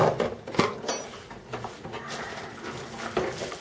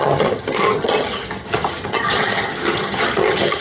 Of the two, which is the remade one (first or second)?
second